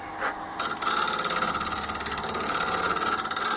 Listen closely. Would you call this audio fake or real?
real